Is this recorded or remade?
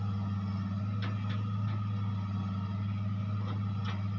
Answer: recorded